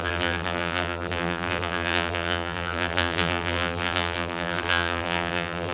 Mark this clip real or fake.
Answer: fake